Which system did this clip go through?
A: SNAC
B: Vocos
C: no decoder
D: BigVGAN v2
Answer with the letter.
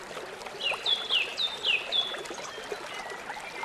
C